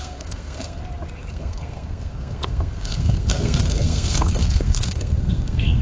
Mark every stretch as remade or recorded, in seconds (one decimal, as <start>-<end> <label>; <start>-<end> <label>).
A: 0.0-0.8 remade; 0.8-1.3 recorded; 1.3-5.8 remade

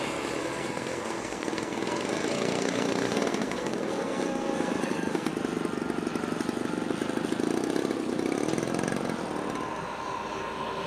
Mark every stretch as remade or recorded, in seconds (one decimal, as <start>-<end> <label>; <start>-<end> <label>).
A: 0.0-0.4 recorded; 0.4-5.3 remade; 5.3-10.9 recorded